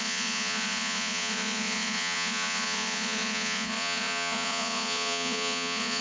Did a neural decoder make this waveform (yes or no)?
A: yes